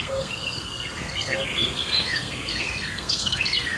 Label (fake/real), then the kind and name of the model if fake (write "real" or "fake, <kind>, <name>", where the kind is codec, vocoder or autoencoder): fake, codec, SNAC